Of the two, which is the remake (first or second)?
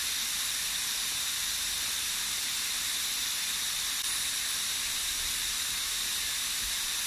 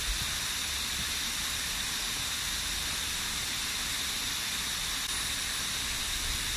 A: first